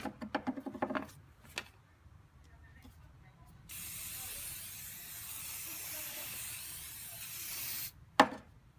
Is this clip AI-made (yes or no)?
no